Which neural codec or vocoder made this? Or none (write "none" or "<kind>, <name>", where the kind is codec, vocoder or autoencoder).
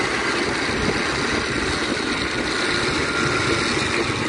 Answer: none